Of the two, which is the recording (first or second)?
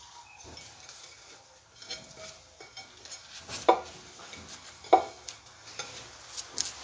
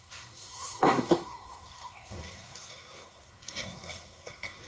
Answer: first